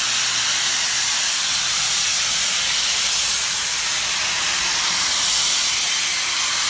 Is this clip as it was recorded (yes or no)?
yes